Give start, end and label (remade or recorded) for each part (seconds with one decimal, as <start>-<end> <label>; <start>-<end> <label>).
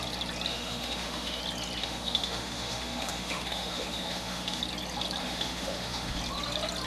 0.0-0.5 recorded; 0.5-1.4 remade; 1.4-1.8 recorded; 1.8-4.6 remade; 4.6-5.2 recorded; 5.2-6.2 remade; 6.2-6.9 recorded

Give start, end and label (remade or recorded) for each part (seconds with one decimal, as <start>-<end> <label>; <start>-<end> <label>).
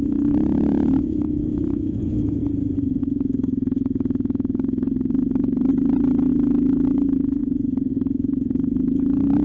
0.0-2.4 remade; 2.4-3.0 recorded; 3.0-5.7 remade; 5.7-6.3 recorded; 6.3-7.4 remade; 7.4-7.9 recorded; 7.9-9.4 remade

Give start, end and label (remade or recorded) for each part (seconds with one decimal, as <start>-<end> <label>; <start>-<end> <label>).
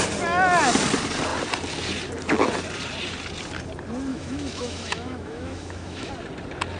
0.0-4.1 recorded; 4.1-6.1 remade; 6.1-6.8 recorded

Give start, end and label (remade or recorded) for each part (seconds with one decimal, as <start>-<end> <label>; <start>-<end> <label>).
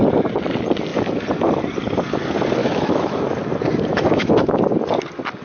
0.0-2.6 recorded; 2.6-3.2 remade; 3.2-3.9 recorded; 3.9-4.6 remade; 4.6-5.4 recorded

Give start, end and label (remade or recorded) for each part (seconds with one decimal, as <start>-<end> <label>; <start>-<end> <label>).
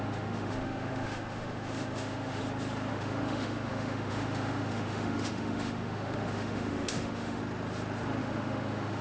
0.0-2.4 remade; 2.4-2.9 recorded; 2.9-7.4 remade; 7.4-8.2 recorded; 8.2-9.0 remade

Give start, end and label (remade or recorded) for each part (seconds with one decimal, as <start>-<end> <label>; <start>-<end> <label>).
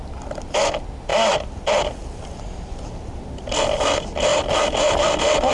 0.0-5.5 recorded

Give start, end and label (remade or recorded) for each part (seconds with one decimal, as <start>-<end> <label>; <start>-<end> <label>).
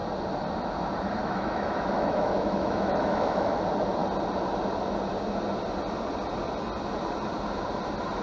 0.0-1.2 recorded; 1.2-3.6 remade; 3.6-8.2 recorded